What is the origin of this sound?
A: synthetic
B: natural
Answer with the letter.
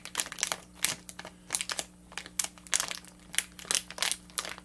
B